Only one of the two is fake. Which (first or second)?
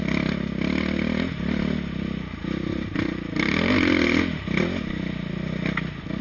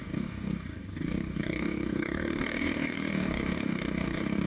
second